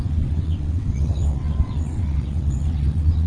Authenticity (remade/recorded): remade